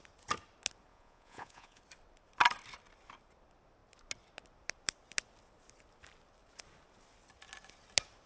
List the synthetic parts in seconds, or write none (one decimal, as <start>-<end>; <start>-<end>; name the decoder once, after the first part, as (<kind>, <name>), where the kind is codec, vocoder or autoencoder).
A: 0.9-1.8 (vocoder, Vocos)